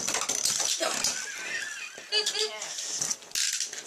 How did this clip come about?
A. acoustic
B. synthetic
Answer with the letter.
A